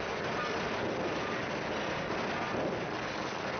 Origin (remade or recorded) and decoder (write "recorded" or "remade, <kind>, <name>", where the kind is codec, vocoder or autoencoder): recorded